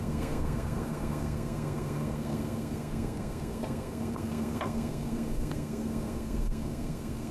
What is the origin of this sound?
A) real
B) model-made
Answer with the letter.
B